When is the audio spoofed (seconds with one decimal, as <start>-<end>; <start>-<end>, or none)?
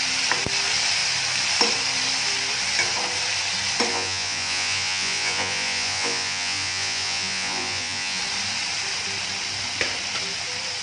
3.9-8.2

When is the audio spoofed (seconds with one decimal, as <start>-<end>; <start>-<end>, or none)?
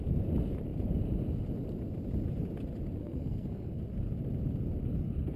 3.0-3.8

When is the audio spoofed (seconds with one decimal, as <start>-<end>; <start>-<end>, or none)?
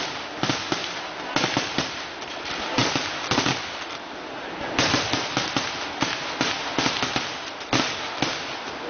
none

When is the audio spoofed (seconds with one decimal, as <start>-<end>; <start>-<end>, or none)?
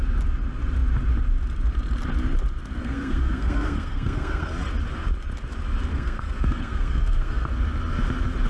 2.8-4.5; 5.9-7.5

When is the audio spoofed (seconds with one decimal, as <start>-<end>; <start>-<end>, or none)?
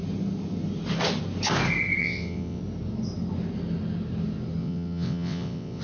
2.0-2.6; 4.6-5.8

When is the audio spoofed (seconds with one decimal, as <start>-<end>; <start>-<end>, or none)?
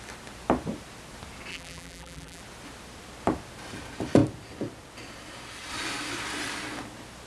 1.5-2.4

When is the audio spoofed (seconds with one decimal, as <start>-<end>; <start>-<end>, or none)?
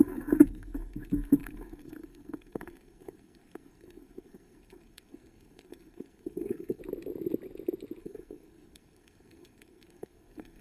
0.0-6.8; 8.0-10.6